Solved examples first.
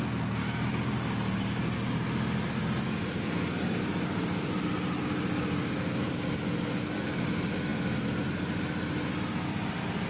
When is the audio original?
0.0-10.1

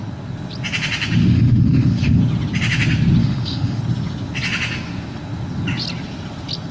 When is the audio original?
0.0-1.2; 2.2-3.2; 3.8-6.7

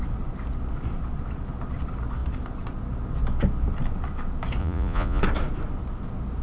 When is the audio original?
0.0-4.6; 5.2-6.4

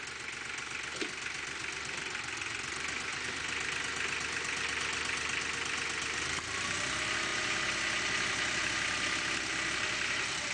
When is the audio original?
0.0-1.6; 2.5-3.1; 3.7-10.5

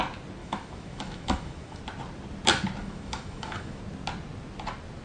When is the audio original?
0.0-0.4; 1.8-2.8; 3.8-5.0

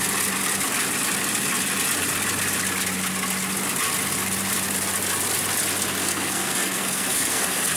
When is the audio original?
0.0-6.0

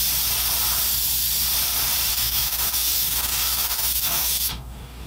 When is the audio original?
0.0-2.1

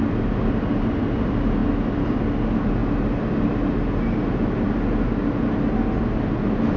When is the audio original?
0.0-6.8